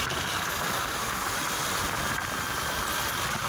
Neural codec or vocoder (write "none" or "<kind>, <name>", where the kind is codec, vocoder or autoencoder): none